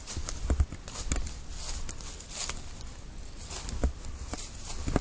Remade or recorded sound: recorded